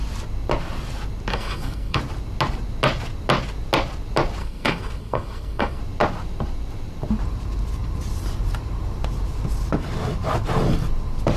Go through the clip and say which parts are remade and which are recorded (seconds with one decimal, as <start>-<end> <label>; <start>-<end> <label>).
0.0-1.3 recorded; 1.3-2.0 remade; 2.0-4.4 recorded; 4.4-5.8 remade; 5.8-11.4 recorded